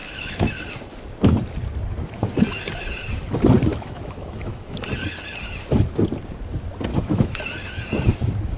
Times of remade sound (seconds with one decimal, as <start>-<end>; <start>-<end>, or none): 0.0-0.6; 3.7-4.8; 6.9-7.4